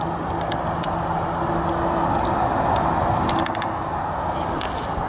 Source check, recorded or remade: recorded